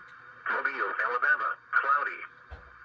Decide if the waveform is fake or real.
fake